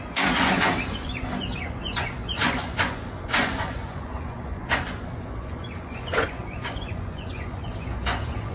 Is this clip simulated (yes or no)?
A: yes